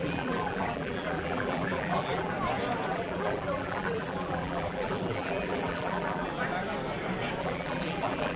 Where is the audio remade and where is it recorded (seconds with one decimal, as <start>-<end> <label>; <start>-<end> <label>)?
0.0-2.3 remade; 2.3-2.9 recorded; 2.9-6.3 remade; 6.3-7.4 recorded; 7.4-8.4 remade